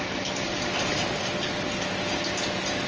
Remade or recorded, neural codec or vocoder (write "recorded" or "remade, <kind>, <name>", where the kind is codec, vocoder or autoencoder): recorded